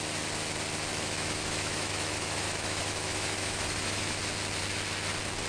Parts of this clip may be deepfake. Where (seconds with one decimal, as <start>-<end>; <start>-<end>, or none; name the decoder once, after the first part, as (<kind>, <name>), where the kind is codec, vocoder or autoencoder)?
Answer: 0.9-4.2 (autoencoder, DAC-VAE)